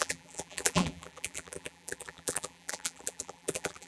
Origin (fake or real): fake